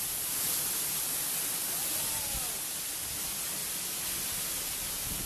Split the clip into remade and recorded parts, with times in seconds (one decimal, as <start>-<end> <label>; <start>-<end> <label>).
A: 0.0-5.3 recorded